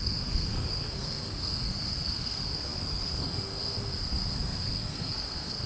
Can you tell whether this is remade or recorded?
remade